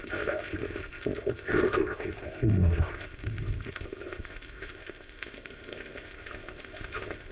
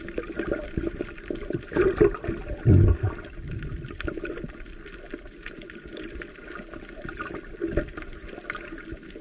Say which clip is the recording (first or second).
second